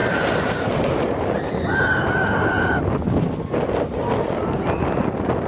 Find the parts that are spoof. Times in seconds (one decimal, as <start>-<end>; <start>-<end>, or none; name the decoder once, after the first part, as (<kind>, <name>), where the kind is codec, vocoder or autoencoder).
none